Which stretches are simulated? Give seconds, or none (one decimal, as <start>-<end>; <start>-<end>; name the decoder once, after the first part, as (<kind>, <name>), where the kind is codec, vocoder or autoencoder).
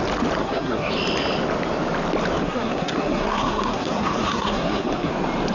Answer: 0.4-0.9 (codec, SNAC); 2.4-5.1